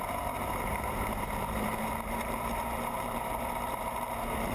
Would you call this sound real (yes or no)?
no